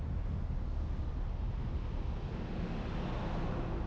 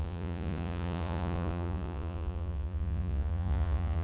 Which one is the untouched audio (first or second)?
first